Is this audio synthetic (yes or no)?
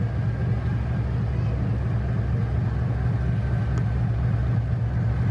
no